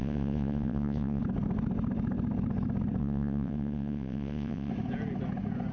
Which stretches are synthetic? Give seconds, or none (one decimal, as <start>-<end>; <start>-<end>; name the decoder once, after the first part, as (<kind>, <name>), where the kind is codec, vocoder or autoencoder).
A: 0.0-1.2 (vocoder, WaveNeXt); 3.0-4.7